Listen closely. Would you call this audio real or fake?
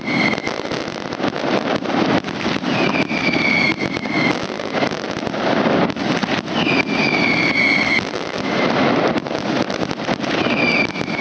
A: real